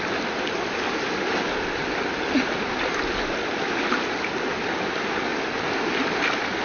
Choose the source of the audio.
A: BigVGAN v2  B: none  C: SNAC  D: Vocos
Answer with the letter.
B